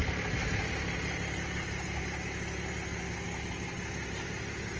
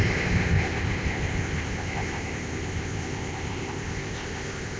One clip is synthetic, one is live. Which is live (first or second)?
first